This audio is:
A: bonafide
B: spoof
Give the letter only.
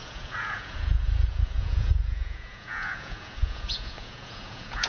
B